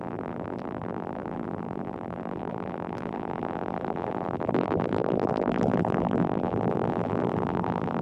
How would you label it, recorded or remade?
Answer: remade